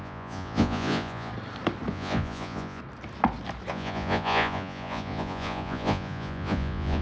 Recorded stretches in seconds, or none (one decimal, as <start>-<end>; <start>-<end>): 1.3-1.9; 2.8-3.7